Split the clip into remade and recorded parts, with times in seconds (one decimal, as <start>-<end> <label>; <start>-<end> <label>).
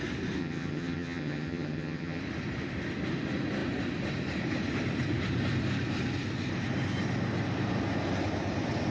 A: 0.0-0.4 recorded; 0.4-2.2 remade; 2.2-8.9 recorded